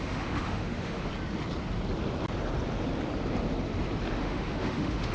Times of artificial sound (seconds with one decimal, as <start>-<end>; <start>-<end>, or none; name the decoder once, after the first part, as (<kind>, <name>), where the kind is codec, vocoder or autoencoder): 0.0-1.1 (autoencoder, DAC-VAE); 4.2-5.1